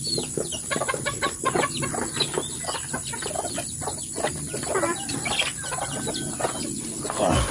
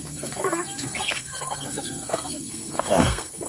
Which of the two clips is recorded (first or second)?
first